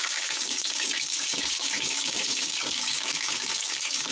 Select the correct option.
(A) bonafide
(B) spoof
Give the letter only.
B